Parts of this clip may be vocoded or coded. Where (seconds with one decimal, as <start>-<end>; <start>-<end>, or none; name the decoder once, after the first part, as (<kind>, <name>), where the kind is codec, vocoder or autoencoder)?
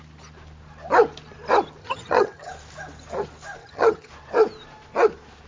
1.8-2.5 (vocoder, HiFi-GAN); 3.6-4.1